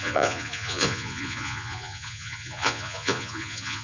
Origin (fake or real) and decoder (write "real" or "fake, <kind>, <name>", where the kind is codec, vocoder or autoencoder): fake, vocoder, Vocos